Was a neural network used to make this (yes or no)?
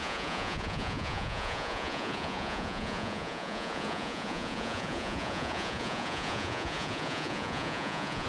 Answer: yes